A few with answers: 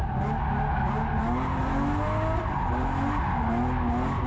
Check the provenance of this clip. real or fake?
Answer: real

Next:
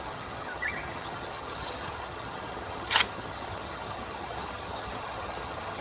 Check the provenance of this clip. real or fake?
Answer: fake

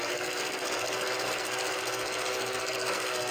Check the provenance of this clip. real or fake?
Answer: fake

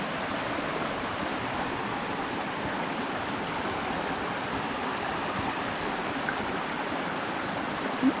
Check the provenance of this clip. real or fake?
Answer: real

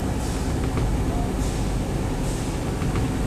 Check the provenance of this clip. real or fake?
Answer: real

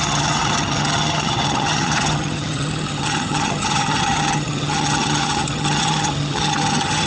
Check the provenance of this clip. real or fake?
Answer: fake